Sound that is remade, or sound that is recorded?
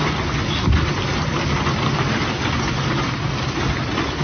recorded